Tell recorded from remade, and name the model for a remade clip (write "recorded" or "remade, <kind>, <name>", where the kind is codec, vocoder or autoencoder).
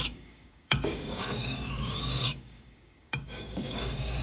remade, codec, DAC